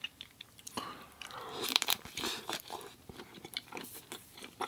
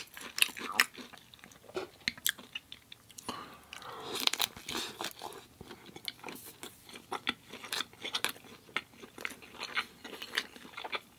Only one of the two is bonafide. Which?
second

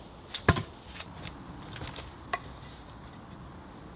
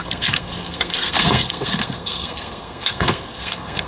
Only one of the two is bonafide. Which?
first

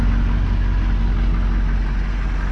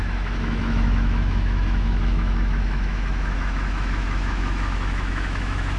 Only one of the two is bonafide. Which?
first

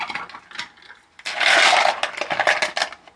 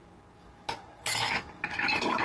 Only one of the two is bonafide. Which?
first